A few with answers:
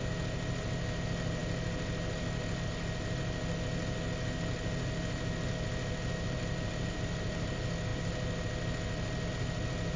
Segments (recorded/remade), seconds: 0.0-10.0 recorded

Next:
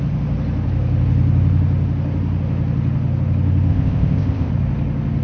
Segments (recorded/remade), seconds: 0.0-3.7 recorded; 3.7-4.5 remade; 4.5-5.2 recorded

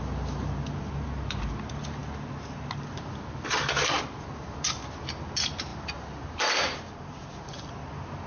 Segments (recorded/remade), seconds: 0.0-8.3 recorded